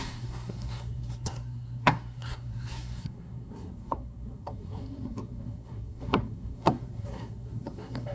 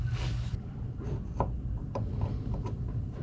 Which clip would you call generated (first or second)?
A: first